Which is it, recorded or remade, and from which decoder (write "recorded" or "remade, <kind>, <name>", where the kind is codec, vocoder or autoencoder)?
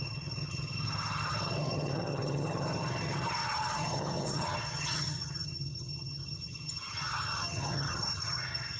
remade, vocoder, HiFi-GAN